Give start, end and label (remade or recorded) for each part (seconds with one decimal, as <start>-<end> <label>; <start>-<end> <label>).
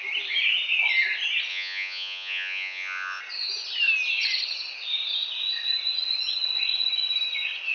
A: 0.0-1.5 recorded; 1.5-3.2 remade; 3.2-7.7 recorded